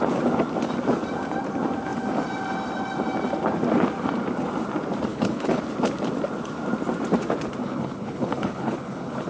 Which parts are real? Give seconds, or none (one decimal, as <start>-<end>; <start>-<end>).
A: 0.0-5.1; 5.6-7.6